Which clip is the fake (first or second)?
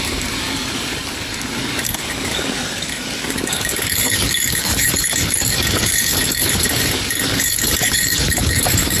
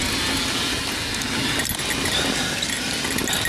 first